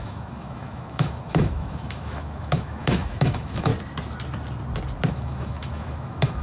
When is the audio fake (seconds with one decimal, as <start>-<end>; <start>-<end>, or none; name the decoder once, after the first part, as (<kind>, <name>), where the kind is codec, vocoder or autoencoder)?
0.0-3.7 (autoencoder, DAC-VAE); 5.1-6.4